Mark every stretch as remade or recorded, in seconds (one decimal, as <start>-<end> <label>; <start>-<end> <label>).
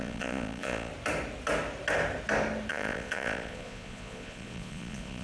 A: 0.0-0.9 remade; 0.9-2.7 recorded; 2.7-5.2 remade